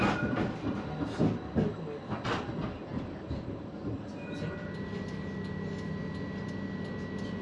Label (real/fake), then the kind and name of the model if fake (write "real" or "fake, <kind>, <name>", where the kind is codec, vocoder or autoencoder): real